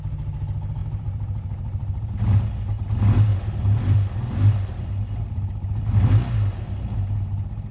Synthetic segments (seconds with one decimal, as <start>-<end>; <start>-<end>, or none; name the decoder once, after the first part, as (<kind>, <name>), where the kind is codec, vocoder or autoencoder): 0.8-2.1 (vocoder, BigVGAN v2); 3.3-6.1